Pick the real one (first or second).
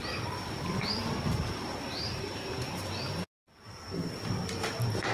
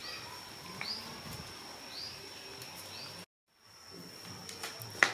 second